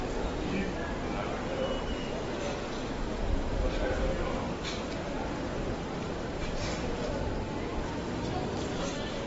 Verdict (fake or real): real